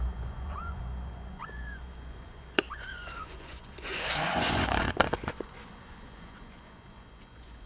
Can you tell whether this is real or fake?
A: fake